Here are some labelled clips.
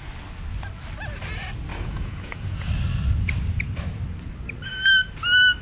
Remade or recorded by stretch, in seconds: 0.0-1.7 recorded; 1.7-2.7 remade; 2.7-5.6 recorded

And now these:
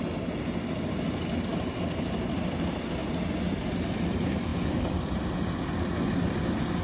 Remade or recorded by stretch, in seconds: 0.0-6.8 recorded

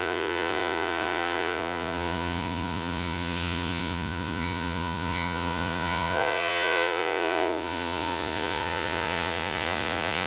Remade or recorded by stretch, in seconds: 0.0-10.3 remade

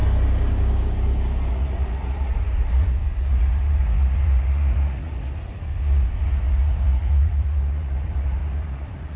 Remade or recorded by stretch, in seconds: 0.0-1.5 recorded; 1.5-9.2 remade

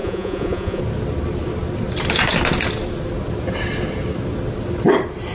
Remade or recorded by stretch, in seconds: 0.0-0.8 remade; 0.8-5.3 recorded

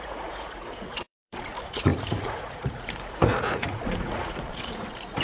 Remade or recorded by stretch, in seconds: 0.0-5.2 remade

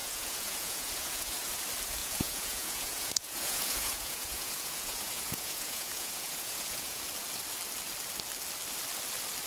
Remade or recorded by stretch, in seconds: 0.0-1.5 remade; 1.5-2.0 recorded; 2.0-7.0 remade; 7.0-9.5 recorded

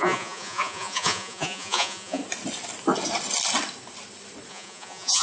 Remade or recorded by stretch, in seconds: 0.0-2.2 remade; 2.2-4.5 recorded; 4.5-5.2 remade